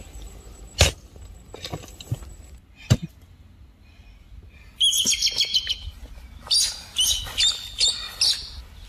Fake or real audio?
real